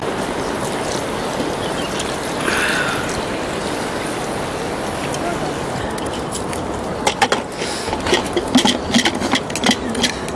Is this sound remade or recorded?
recorded